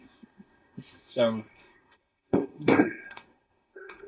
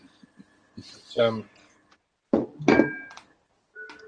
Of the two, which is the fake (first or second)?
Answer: first